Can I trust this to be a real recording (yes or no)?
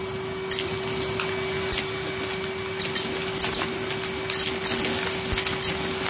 yes